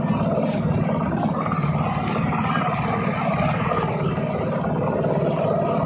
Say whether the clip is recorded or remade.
recorded